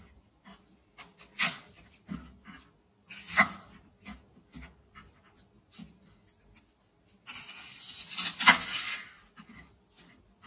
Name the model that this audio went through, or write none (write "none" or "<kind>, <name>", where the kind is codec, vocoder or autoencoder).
none